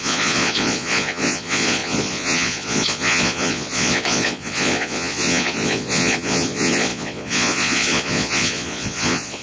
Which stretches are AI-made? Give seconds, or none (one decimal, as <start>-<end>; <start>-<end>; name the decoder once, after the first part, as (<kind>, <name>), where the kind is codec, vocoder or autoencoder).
0.0-9.4 (vocoder, Vocos)